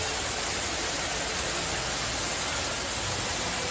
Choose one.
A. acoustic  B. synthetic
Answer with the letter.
A